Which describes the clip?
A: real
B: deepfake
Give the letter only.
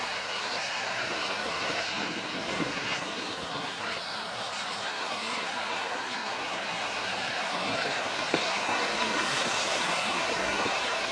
B